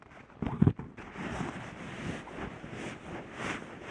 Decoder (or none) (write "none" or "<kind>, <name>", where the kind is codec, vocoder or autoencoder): none